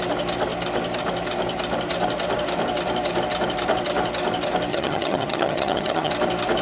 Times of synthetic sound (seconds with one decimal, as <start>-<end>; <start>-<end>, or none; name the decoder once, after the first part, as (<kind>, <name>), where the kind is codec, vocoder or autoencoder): 4.7-6.1 (vocoder, HiFi-GAN)